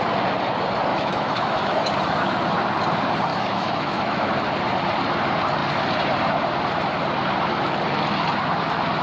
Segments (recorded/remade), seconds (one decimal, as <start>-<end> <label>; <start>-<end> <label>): 0.0-0.9 recorded; 0.9-1.9 remade; 1.9-3.3 recorded; 3.3-4.3 remade; 4.3-9.0 recorded